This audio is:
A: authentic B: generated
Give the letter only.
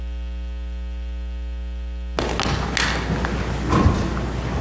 A